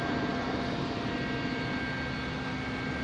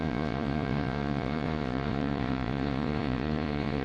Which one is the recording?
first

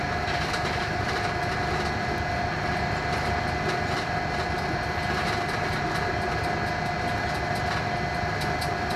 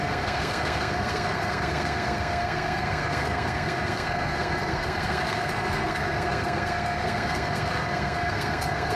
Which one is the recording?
first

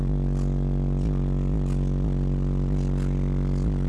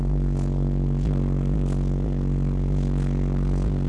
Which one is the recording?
first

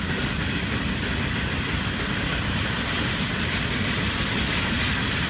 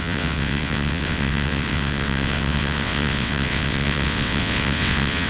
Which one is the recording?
first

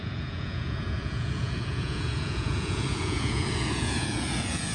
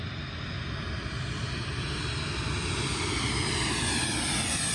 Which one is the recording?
second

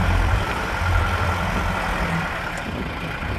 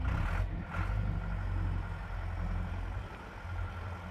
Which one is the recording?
second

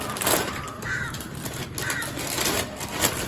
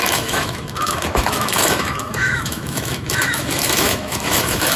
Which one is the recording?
first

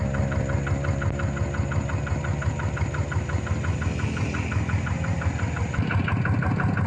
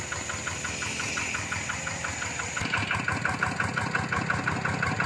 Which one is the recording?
second